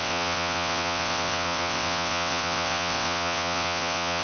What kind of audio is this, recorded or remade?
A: remade